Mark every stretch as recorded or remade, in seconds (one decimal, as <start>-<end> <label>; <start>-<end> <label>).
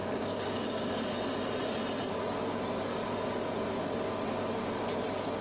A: 0.0-1.1 remade; 1.1-2.9 recorded; 2.9-3.5 remade; 3.5-5.4 recorded